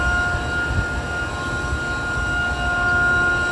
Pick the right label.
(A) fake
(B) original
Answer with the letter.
B